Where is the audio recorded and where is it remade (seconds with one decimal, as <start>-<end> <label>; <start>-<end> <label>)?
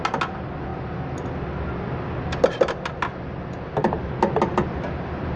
0.0-5.4 recorded